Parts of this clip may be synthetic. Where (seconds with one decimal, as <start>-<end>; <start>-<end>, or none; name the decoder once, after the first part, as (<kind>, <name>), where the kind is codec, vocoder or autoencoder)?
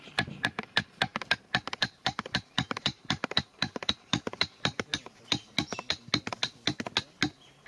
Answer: 0.0-4.9 (vocoder, BigVGAN v2)